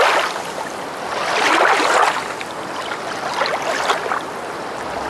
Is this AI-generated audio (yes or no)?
no